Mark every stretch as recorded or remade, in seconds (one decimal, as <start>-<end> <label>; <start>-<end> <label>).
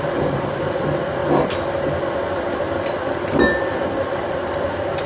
0.0-5.1 recorded